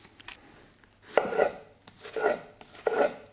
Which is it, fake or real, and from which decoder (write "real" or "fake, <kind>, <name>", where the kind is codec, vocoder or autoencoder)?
real